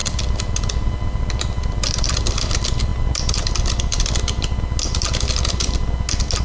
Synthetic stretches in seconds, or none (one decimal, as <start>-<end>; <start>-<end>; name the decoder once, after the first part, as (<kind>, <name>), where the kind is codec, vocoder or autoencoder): none